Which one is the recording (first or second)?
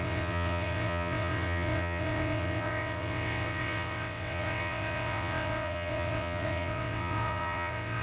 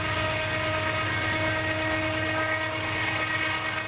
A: second